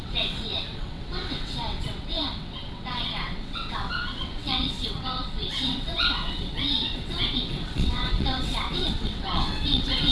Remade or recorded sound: remade